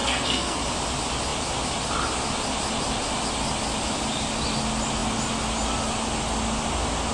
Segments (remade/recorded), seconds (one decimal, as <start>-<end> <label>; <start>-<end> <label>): 0.0-0.6 remade; 0.6-7.1 recorded